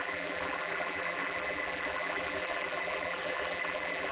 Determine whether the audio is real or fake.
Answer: fake